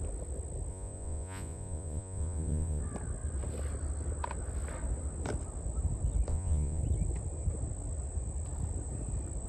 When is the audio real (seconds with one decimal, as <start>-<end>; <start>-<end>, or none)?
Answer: 0.0-0.7; 2.8-6.3; 6.8-9.5